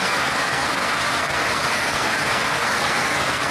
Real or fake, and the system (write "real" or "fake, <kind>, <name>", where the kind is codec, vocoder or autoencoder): fake, codec, SNAC